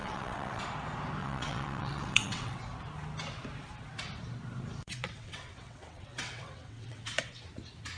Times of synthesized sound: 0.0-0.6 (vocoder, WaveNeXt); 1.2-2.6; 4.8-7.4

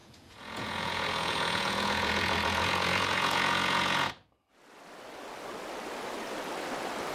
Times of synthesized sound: 0.0-4.1 (vocoder, Vocos)

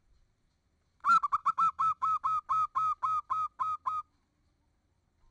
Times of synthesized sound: 1.4-2.2 (autoencoder, DAC-VAE)

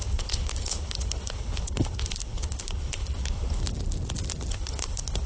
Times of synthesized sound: 0.0-3.6 (codec, HILCodec); 4.5-5.3